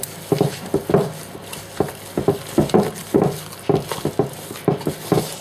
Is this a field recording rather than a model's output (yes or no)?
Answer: yes